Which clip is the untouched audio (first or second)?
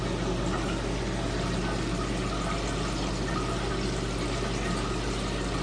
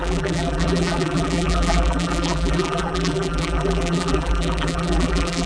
first